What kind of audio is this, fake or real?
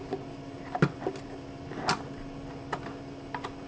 real